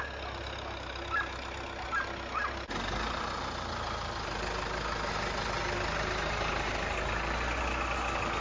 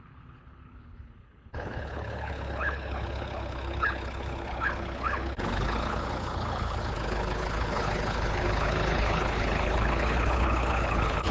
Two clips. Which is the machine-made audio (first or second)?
second